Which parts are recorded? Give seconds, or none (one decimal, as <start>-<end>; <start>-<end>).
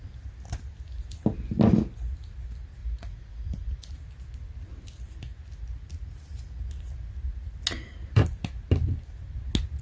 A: 0.0-2.8; 3.9-9.8